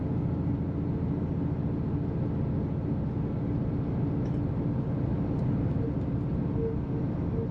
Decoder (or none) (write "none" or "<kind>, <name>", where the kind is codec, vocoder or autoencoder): none